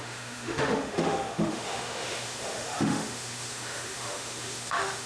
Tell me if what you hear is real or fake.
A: fake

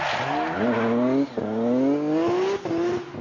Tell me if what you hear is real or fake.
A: real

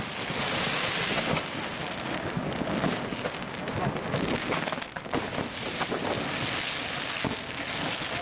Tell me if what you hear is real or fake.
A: real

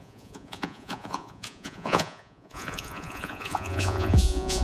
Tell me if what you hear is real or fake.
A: fake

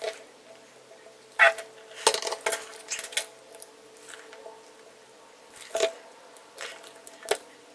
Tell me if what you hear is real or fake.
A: real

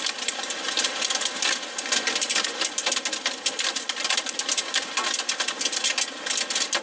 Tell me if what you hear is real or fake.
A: real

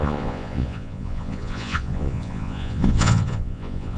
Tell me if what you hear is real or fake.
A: fake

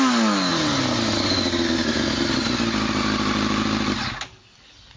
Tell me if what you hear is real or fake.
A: real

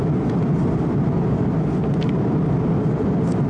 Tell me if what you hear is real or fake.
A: real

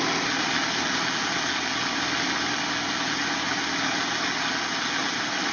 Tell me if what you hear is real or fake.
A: real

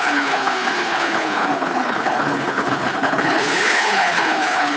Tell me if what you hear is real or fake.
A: fake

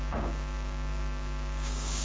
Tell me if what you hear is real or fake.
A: fake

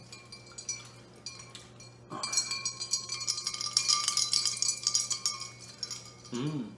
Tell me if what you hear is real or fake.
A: real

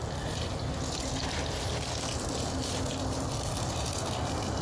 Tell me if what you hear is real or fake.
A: real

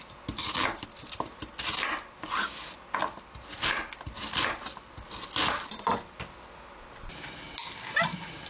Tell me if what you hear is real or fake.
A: real